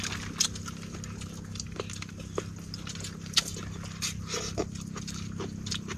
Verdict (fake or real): real